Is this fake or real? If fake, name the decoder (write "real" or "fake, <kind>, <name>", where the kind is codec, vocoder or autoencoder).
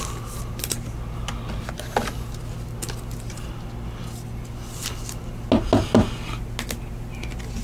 real